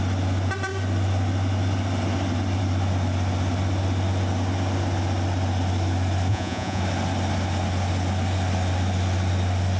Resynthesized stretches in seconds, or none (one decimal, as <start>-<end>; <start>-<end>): 6.3-6.8